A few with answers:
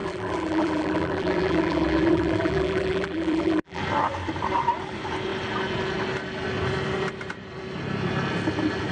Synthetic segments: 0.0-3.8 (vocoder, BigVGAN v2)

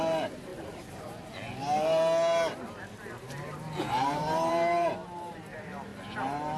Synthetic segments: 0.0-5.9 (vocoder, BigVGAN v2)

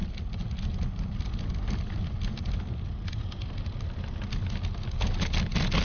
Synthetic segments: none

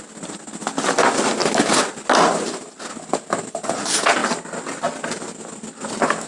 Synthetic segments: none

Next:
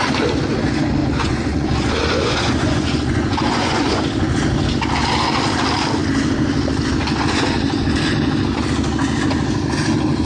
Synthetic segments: 1.0-4.0 (vocoder, Vocos)

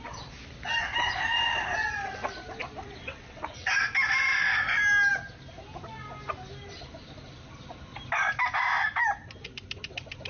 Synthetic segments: 3.1-3.7 (vocoder, WaveNeXt)

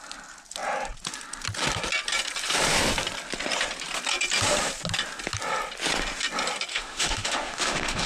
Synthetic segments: 6.7-8.1 (autoencoder, DAC-VAE)